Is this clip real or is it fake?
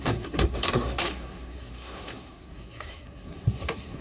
fake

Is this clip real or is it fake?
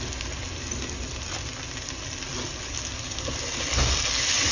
real